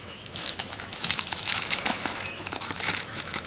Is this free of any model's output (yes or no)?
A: no